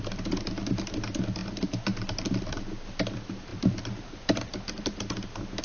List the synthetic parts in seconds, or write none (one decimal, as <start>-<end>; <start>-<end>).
0.0-5.6